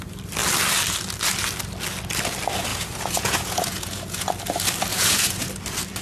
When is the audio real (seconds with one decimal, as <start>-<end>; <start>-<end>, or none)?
0.0-2.7; 4.3-4.9; 5.5-6.0